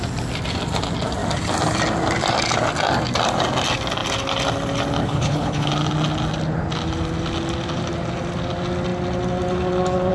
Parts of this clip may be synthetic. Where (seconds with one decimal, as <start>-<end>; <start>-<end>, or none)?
5.0-5.7